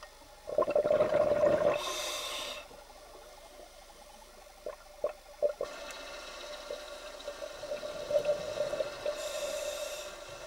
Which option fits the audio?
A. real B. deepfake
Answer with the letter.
A